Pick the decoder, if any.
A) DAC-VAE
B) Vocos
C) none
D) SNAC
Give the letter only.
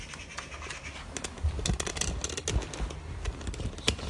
C